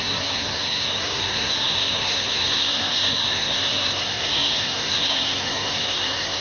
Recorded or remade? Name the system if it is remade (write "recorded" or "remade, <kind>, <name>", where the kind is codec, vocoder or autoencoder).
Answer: remade, codec, SNAC